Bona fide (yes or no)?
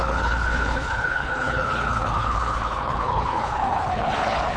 no